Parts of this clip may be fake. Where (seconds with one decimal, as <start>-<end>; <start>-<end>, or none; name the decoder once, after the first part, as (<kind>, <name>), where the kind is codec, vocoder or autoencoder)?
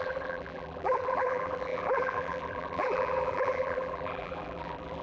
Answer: 0.0-5.0 (vocoder, BigVGAN v2)